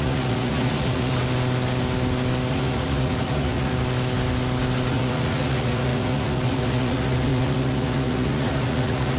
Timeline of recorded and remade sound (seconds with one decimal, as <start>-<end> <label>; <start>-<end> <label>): 0.0-1.1 remade; 1.1-2.5 recorded; 2.5-3.7 remade; 3.7-4.9 recorded; 4.9-9.2 remade